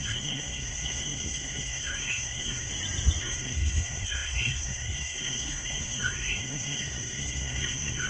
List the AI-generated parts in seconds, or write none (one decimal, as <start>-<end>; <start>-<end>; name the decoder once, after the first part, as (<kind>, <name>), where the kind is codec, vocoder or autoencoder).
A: 0.0-2.7 (codec, SNAC); 3.2-8.1